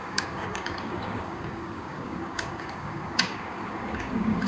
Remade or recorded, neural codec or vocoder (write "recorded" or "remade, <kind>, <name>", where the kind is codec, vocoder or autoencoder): remade, codec, DAC